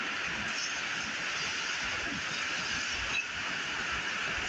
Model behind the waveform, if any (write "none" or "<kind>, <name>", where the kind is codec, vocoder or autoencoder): none